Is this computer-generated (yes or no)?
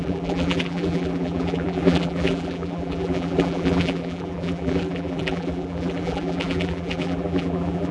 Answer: yes